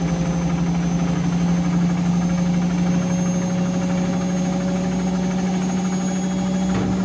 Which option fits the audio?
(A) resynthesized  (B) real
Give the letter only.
B